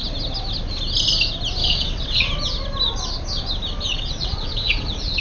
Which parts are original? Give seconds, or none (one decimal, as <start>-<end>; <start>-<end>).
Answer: 0.0-1.6; 2.2-3.9